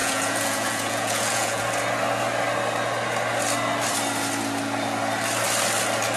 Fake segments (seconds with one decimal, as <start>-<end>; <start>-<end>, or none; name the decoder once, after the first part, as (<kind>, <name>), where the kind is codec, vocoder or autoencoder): 0.0-1.6 (vocoder, Vocos)